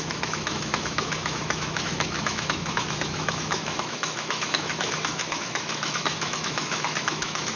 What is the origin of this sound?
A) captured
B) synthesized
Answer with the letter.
B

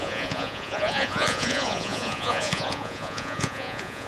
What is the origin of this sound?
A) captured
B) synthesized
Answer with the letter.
B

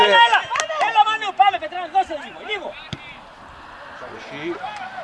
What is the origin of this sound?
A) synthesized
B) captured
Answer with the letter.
B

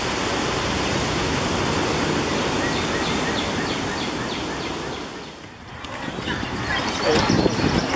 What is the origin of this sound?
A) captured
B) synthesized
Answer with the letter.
A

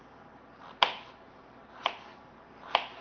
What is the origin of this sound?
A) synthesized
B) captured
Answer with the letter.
B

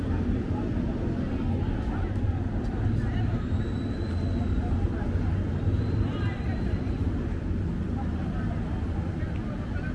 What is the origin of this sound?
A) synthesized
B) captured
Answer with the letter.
B